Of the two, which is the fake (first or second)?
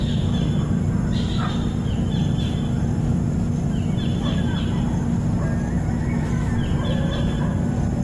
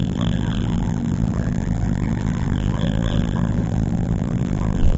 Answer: second